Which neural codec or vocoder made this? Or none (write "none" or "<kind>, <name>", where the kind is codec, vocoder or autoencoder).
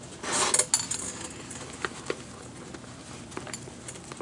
none